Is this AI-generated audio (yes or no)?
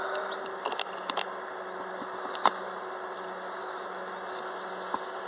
no